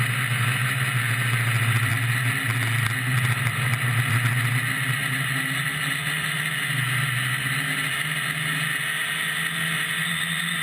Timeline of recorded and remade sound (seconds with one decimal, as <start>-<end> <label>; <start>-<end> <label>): 0.0-10.6 recorded